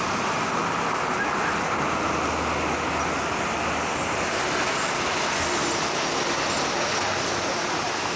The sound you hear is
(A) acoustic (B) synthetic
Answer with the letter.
A